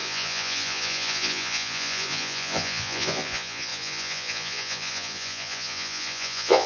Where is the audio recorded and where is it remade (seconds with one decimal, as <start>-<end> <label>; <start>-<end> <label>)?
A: 0.0-6.7 remade